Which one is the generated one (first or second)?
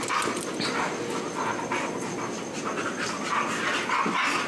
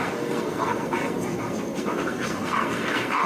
second